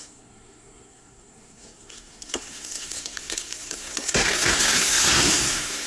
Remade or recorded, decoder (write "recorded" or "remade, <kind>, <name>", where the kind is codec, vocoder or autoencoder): remade, codec, SNAC